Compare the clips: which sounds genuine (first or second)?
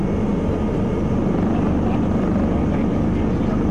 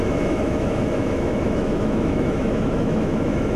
first